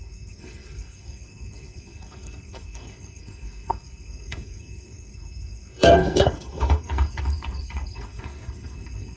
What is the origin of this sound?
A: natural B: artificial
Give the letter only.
B